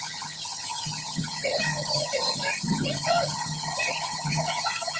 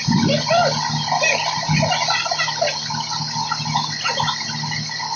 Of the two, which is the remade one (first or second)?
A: first